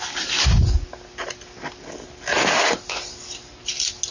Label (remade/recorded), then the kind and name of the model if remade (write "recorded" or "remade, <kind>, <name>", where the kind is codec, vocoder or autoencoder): recorded